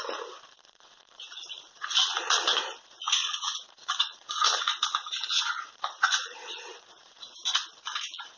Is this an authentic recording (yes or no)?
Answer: no